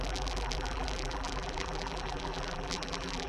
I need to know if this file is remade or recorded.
remade